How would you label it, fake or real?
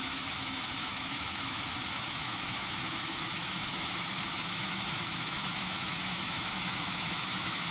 fake